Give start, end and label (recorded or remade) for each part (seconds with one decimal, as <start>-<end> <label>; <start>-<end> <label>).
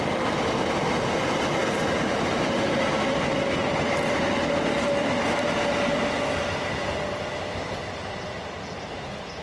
0.0-9.4 recorded